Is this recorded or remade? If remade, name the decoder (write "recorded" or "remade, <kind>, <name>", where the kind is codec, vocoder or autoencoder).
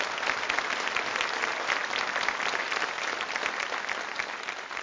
recorded